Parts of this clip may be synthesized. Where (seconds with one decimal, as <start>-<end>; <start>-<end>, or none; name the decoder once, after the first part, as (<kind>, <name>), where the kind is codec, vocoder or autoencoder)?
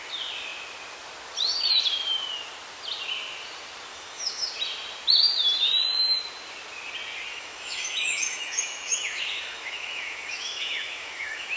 3.9-4.5 (autoencoder, DAC-VAE); 7.3-11.6